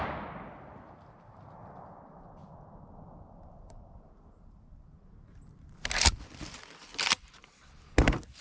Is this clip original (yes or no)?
yes